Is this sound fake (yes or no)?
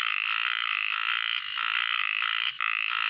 no